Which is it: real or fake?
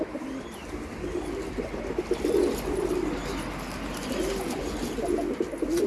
real